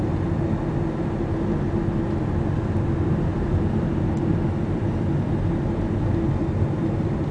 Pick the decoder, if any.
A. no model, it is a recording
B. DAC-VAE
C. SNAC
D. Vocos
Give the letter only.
A